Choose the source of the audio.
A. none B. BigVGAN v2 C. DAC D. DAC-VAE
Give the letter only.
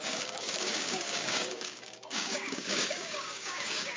C